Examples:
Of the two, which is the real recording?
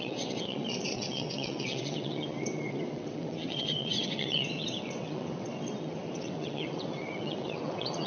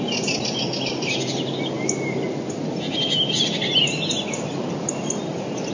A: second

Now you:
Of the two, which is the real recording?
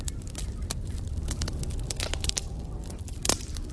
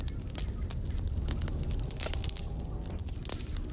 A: second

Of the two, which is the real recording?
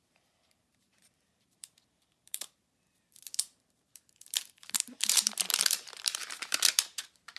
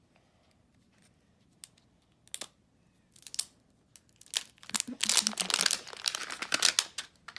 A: second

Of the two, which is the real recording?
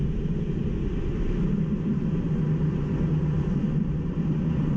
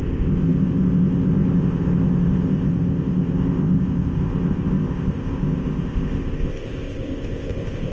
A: first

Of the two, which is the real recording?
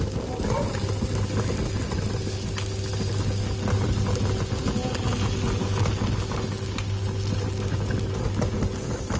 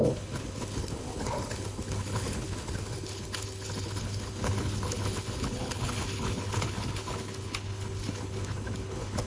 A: first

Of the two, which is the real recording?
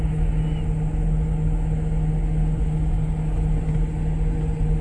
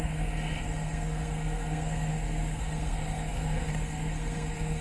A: first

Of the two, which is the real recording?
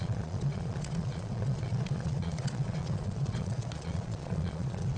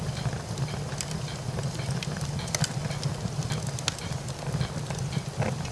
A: second